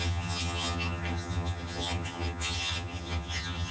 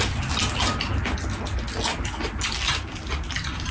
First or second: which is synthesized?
first